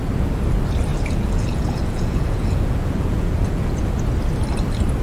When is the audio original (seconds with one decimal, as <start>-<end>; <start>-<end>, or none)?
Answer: 0.0-0.9; 3.9-5.0

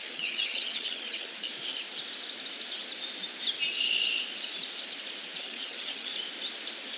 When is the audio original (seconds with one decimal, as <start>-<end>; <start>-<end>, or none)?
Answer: 1.5-5.4; 6.1-7.0

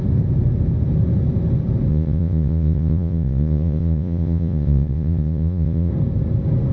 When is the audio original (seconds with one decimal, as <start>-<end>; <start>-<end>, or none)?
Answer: 0.0-1.9; 5.9-6.7

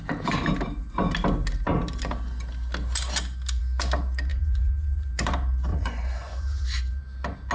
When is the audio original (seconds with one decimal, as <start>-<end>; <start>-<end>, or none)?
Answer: 0.0-4.3; 5.3-5.7; 7.0-7.5

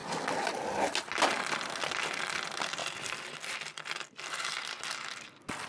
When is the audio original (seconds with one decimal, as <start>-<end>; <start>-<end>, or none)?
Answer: 0.0-2.8; 4.3-5.7

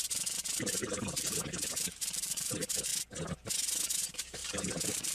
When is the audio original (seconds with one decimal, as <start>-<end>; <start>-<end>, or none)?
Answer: 2.9-4.0